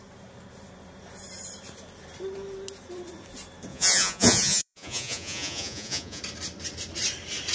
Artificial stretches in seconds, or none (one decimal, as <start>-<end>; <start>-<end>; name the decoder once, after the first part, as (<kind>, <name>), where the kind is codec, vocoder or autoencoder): 3.7-6.2 (vocoder, Vocos)